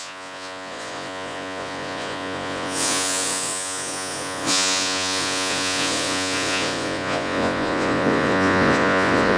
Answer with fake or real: fake